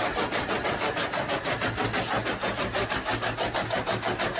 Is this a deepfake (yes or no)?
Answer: no